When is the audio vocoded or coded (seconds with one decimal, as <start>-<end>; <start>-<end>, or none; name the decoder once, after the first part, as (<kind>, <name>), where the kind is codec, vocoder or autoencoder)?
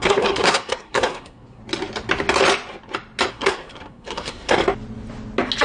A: 0.0-1.6 (codec, SNAC); 3.3-4.6